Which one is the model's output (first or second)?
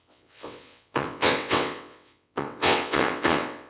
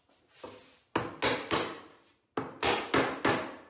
first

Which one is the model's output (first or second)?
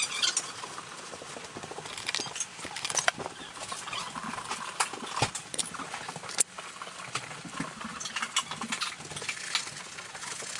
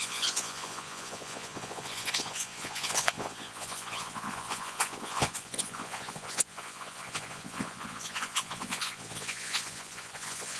second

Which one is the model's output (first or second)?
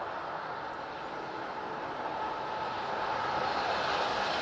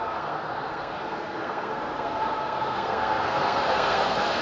second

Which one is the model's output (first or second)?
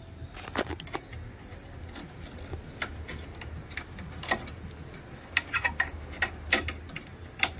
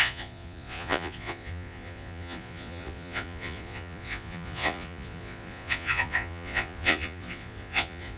second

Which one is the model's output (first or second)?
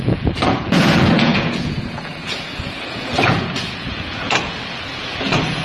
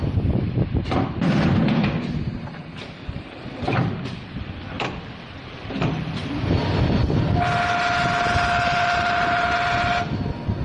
first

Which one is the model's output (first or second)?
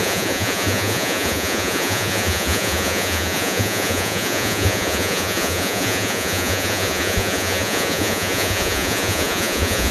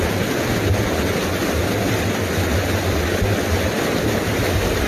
first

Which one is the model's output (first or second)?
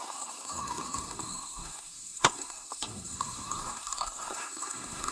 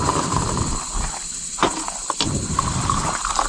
first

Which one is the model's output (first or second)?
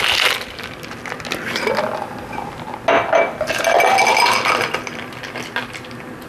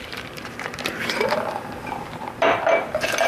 second